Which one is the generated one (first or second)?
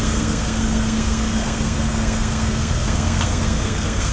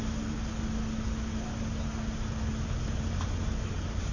first